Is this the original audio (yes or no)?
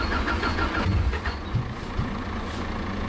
no